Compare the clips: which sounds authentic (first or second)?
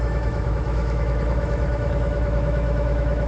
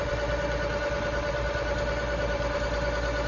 second